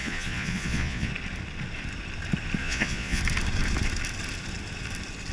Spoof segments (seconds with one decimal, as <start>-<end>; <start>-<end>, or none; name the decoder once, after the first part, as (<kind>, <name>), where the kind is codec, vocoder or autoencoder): 0.0-1.1 (vocoder, Vocos); 2.6-3.2